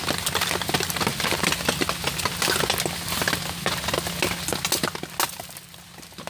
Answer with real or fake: real